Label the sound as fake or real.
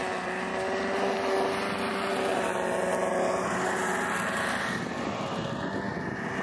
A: real